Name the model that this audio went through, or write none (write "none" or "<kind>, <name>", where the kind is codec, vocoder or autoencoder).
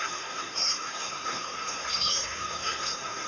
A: codec, SNAC